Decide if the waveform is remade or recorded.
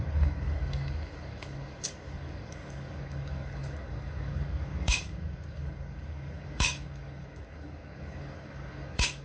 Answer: remade